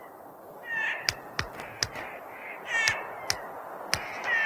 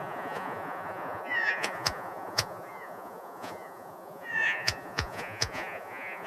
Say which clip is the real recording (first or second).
first